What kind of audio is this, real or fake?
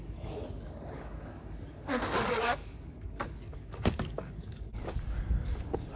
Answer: fake